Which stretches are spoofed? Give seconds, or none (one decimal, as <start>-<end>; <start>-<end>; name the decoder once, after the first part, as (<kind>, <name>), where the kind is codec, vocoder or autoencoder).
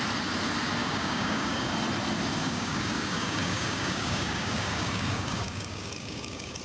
0.8-1.7 (codec, DAC); 2.4-6.6